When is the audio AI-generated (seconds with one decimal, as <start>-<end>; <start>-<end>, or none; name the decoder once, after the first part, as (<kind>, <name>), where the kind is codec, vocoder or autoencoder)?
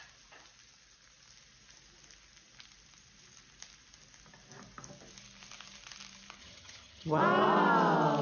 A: 6.4-7.2 (vocoder, HiFi-GAN)